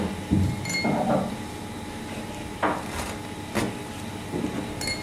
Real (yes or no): yes